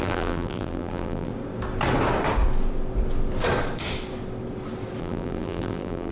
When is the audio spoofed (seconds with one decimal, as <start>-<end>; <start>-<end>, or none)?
0.0-1.3; 5.0-6.1